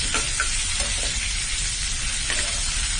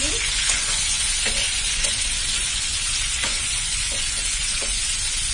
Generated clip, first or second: second